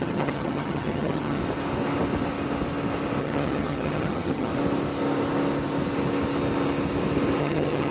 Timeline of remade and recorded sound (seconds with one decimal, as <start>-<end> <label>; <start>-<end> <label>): 0.0-1.4 remade; 1.4-3.2 recorded; 3.2-4.5 remade; 4.5-7.4 recorded; 7.4-7.9 remade